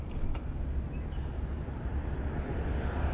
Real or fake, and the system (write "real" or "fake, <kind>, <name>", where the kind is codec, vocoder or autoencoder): real